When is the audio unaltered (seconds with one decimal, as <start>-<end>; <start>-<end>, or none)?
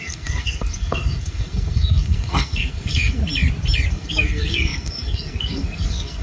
3.2-3.9